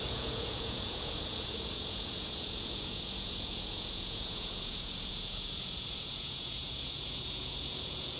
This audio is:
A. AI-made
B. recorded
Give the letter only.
A